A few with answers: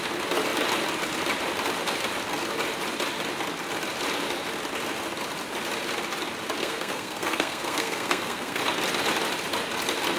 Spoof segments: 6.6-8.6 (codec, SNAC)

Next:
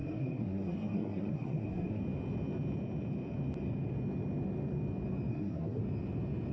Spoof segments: 0.0-2.0 (codec, SNAC); 5.3-5.8

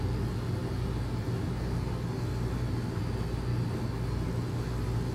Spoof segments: none